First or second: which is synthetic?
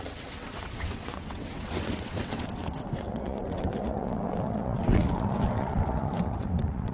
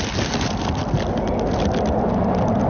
first